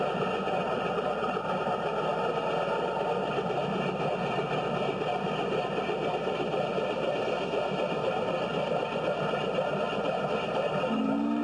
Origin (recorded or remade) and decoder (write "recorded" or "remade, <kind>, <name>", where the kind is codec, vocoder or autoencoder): recorded